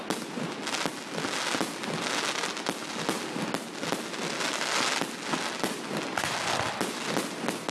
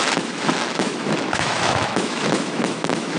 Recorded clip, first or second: first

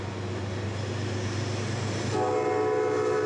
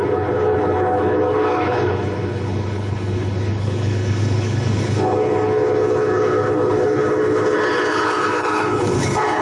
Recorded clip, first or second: first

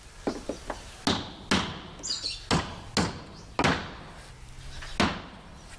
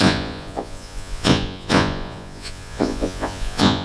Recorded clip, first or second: first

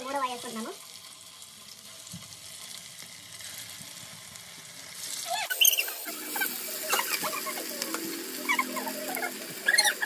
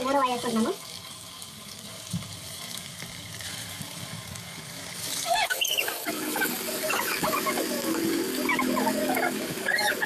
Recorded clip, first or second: first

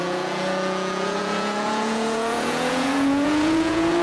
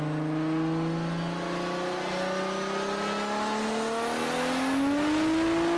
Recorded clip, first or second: second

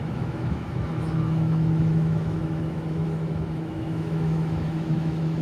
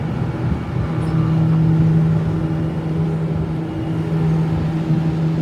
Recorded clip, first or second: second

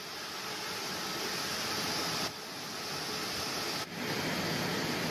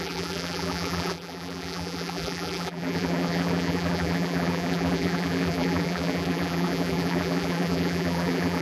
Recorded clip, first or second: first